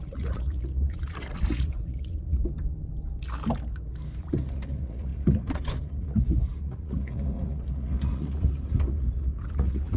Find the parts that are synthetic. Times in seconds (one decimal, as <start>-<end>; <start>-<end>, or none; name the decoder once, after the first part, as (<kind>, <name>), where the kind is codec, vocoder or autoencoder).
0.0-2.4 (vocoder, Vocos); 4.2-10.0